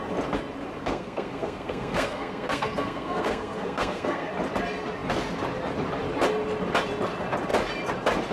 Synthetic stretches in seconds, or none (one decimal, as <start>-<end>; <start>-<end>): 0.8-4.3

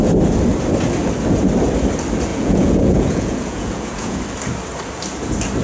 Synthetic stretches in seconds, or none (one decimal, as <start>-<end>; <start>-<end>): 2.3-4.2

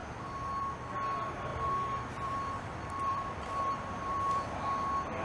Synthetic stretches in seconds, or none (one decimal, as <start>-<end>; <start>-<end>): 1.5-4.6

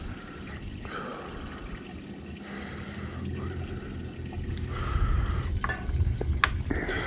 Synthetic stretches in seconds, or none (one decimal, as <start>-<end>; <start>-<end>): none

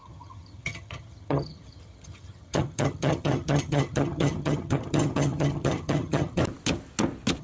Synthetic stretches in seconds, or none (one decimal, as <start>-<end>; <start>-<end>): 0.0-6.4

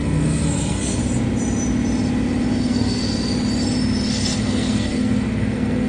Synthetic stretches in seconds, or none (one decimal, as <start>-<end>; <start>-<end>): 0.0-1.0; 2.6-3.0; 4.1-5.9

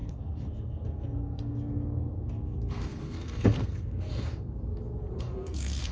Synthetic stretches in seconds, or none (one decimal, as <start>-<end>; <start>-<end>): 0.0-4.7; 5.2-5.9

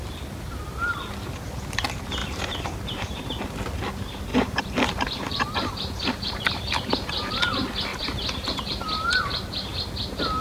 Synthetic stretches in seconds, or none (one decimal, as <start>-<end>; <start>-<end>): 2.2-3.4; 4.3-7.3; 7.9-9.2